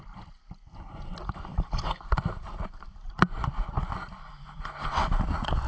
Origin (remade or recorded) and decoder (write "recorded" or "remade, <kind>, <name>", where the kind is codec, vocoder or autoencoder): recorded